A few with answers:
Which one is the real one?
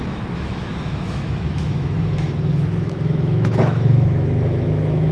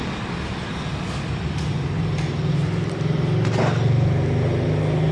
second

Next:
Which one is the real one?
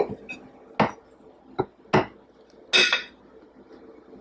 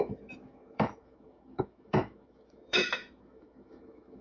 first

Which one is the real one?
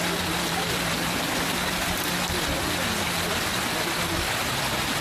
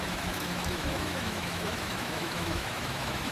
first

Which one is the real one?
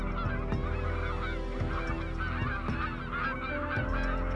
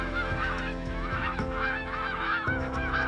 first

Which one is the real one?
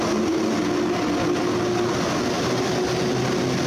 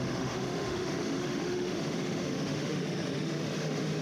first